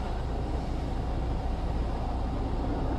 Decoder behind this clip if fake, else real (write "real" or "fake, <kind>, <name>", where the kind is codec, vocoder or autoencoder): real